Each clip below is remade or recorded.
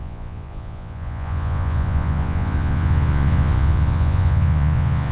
remade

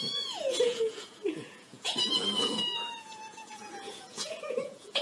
remade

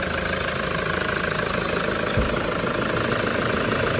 recorded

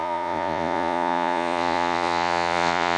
remade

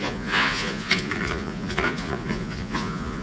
remade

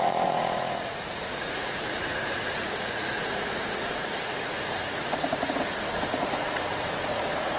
remade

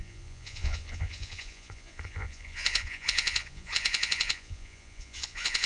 remade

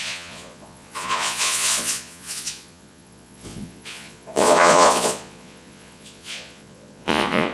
remade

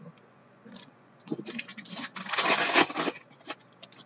remade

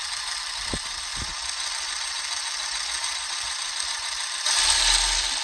recorded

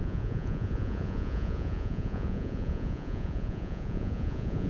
remade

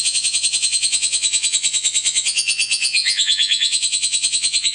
remade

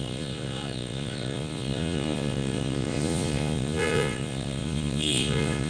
remade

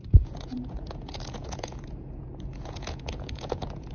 remade